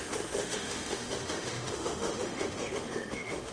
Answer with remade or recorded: remade